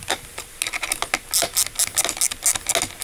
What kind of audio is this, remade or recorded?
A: recorded